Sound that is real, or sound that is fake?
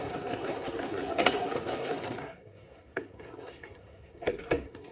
fake